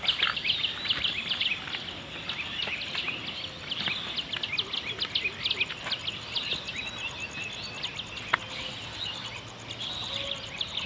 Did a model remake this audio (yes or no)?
no